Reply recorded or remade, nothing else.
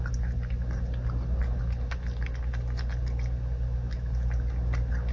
recorded